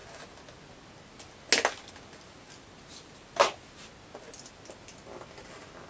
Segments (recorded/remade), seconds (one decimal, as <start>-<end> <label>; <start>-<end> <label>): 0.0-5.9 recorded